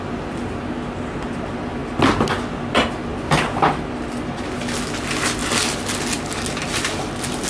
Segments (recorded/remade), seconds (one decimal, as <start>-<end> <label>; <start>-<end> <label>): 0.0-7.5 recorded